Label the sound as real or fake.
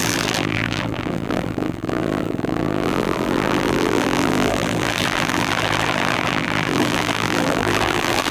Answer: fake